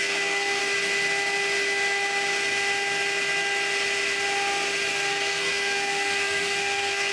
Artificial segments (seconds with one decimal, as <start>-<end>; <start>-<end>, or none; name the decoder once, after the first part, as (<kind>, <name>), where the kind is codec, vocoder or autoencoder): 0.0-0.6 (codec, SNAC); 4.9-7.1